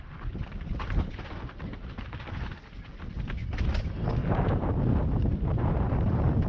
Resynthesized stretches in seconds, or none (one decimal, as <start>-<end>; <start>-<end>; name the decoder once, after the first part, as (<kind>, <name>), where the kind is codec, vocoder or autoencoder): 4.2-6.5 (vocoder, BigVGAN v2)